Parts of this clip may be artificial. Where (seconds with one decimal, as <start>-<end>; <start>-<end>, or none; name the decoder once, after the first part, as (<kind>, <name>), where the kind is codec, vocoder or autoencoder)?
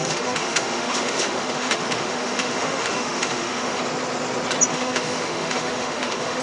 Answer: 0.0-3.8 (autoencoder, DAC-VAE); 4.7-6.4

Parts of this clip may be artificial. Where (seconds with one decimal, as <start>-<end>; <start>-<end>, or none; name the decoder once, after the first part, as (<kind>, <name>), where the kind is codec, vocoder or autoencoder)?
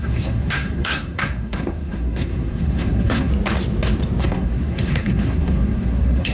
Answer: 0.0-3.3 (codec, SNAC); 4.2-6.3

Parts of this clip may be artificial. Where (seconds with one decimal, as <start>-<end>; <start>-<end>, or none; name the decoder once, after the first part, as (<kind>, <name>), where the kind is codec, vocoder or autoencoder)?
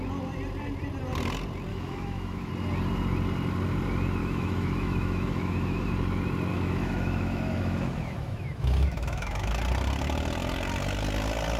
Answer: 1.7-2.5 (autoencoder, DAC-VAE); 4.2-5.9; 6.5-9.5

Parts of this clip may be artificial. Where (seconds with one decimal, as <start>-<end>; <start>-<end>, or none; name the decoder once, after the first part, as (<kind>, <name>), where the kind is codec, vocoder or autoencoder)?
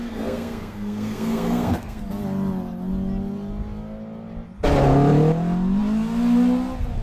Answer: 0.0-2.0 (codec, SNAC)